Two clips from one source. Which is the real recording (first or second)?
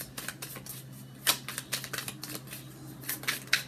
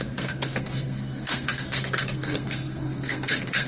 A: first